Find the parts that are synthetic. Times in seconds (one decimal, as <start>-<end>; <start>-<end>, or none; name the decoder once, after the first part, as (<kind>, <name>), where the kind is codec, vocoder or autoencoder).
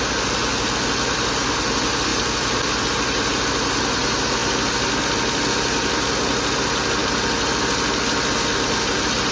none